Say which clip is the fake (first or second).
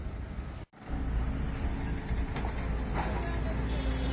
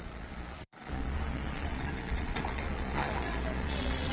second